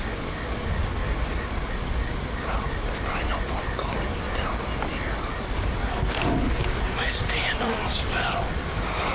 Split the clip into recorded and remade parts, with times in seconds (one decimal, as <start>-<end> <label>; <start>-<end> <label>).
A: 0.0-9.1 recorded